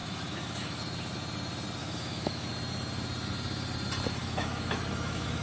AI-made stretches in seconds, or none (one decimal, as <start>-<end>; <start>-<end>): 0.0-0.8; 1.8-2.5; 4.2-5.4